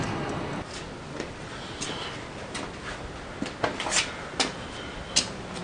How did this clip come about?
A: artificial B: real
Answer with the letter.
B